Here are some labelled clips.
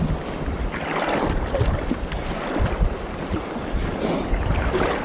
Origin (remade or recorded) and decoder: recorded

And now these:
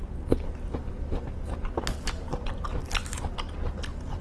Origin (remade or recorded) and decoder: recorded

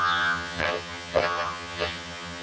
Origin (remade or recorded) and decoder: remade, vocoder, HiFi-GAN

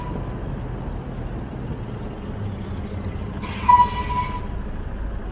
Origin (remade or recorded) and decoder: recorded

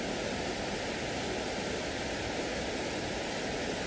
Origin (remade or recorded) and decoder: remade, vocoder, BigVGAN v2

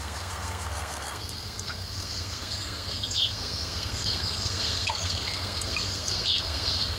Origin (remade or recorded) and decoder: remade, codec, SNAC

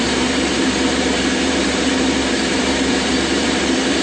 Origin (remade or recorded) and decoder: remade, vocoder, BigVGAN v2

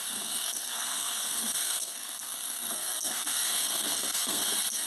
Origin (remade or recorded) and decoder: remade, codec, SNAC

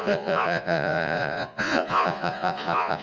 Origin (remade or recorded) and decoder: remade, vocoder, Vocos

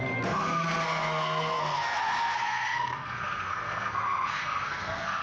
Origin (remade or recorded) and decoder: remade, codec, SNAC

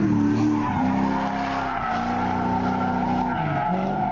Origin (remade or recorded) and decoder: recorded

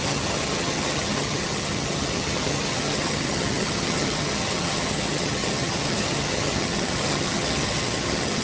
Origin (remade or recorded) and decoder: remade, vocoder, HiFi-GAN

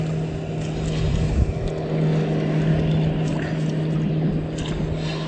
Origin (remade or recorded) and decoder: recorded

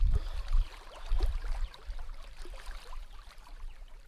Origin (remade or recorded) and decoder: remade, vocoder, BigVGAN v2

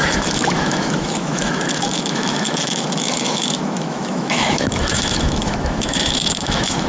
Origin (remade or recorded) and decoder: remade, autoencoder, DAC-VAE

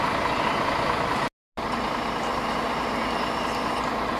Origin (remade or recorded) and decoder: recorded